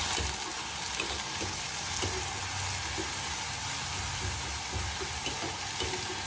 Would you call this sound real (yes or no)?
yes